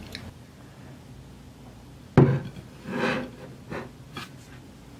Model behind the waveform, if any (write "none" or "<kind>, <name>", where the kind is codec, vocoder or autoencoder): none